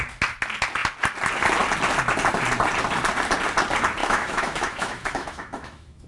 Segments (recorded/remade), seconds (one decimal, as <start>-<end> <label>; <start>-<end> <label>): 0.0-4.0 recorded; 4.0-6.1 remade